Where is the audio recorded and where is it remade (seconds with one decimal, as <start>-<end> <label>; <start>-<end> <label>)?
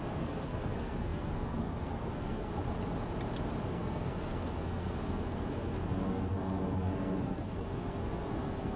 0.0-2.5 remade; 2.5-3.7 recorded; 3.7-8.8 remade